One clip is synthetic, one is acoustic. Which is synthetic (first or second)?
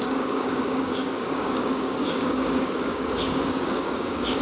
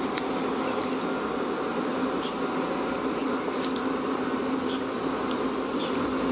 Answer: first